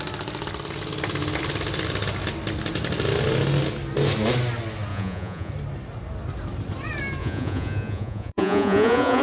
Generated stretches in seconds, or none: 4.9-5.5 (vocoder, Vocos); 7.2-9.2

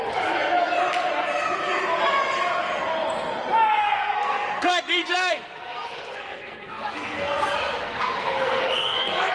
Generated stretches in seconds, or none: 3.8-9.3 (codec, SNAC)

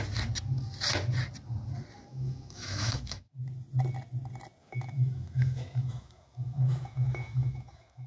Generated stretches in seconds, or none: 2.1-3.4 (autoencoder, DAC-VAE); 4.6-8.1

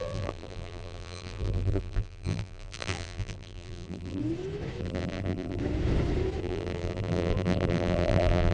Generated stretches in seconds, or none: 0.0-4.2 (vocoder, BigVGAN v2); 4.8-5.6; 6.4-8.5

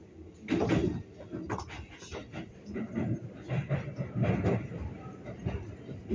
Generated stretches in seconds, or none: none